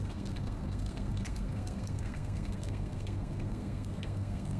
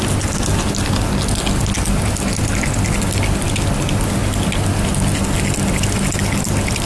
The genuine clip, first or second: second